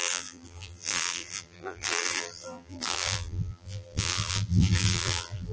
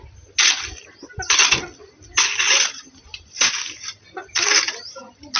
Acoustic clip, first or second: second